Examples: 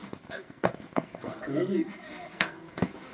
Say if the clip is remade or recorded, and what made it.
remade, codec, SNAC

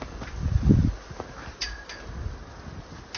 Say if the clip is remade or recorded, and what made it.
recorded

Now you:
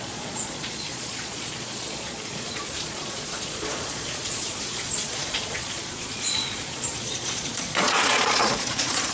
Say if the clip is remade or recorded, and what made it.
remade, vocoder, Vocos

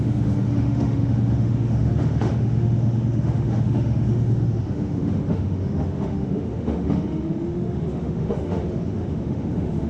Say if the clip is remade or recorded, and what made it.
remade, autoencoder, DAC-VAE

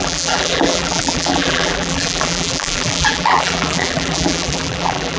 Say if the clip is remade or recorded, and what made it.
remade, vocoder, BigVGAN v2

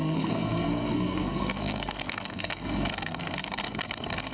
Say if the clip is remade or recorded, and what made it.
remade, codec, SNAC